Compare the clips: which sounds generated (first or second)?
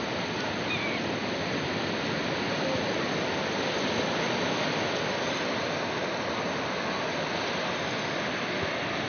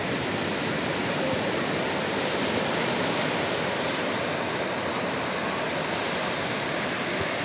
second